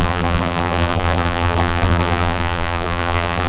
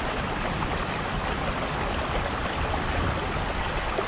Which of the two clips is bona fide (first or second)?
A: second